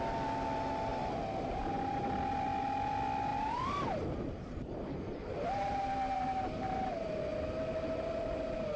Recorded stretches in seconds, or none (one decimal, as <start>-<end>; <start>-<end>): 0.0-0.9; 1.6-3.3; 7.2-8.8